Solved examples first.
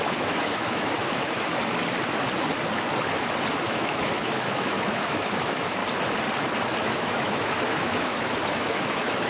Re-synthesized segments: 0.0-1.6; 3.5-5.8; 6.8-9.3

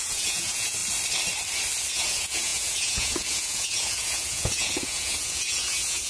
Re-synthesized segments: 0.0-0.8; 1.9-6.1

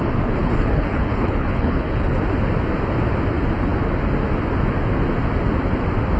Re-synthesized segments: 0.4-2.2

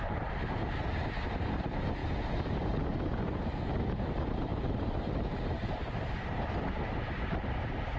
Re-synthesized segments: 4.5-6.4

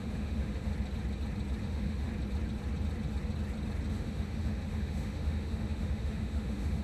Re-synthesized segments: 0.0-0.7; 1.6-2.1; 3.9-6.8

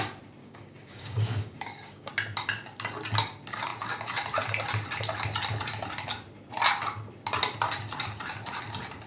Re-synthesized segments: 0.4-2.1